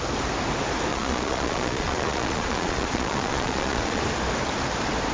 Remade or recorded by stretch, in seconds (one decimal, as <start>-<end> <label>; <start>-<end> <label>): 0.0-0.9 recorded; 0.9-4.0 remade; 4.0-5.1 recorded